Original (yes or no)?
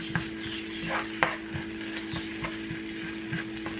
yes